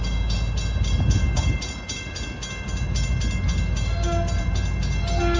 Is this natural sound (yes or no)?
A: yes